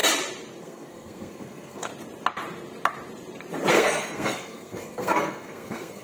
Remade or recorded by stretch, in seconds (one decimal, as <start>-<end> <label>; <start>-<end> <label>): 0.0-0.6 recorded; 0.6-1.9 remade; 1.9-3.7 recorded; 3.7-6.0 remade

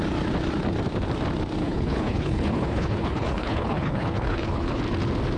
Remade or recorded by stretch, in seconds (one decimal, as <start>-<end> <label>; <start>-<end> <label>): 0.0-1.6 recorded; 1.6-4.8 remade; 4.8-5.4 recorded

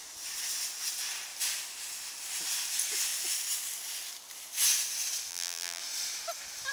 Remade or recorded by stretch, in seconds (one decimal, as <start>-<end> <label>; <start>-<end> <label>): 0.0-5.3 recorded; 5.3-5.8 remade; 5.8-6.7 recorded